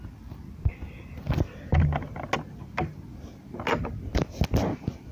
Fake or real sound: real